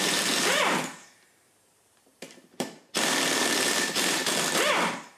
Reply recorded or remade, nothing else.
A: remade